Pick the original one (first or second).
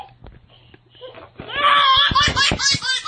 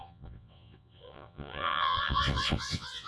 first